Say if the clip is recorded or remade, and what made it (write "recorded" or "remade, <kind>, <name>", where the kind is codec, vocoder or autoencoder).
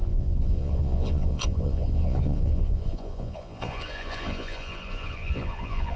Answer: remade, vocoder, Vocos